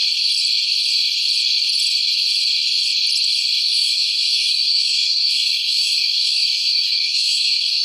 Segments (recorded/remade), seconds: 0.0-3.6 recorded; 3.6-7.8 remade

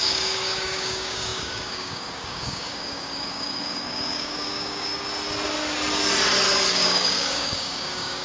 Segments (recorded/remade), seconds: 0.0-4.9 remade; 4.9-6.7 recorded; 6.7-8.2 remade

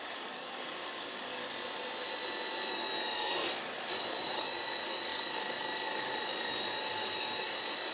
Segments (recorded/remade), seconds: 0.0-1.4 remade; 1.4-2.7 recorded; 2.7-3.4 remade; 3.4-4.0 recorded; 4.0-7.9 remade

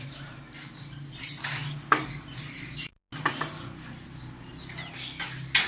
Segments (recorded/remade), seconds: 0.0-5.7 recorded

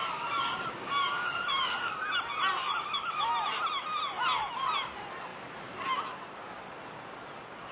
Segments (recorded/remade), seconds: 0.0-2.0 remade; 2.0-2.6 recorded; 2.6-3.3 remade; 3.3-7.7 recorded

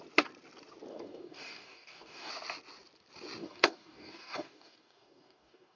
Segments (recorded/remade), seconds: 0.0-0.9 recorded; 0.9-2.3 remade; 2.3-3.4 recorded; 3.4-5.8 remade

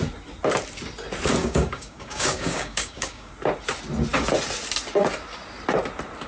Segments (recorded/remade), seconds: 0.0-1.4 recorded; 1.4-3.3 remade; 3.3-6.3 recorded